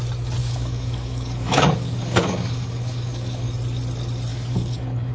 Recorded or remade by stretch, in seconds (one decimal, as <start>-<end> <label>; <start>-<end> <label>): 0.0-0.4 recorded; 0.4-3.5 remade; 3.5-4.3 recorded; 4.3-5.1 remade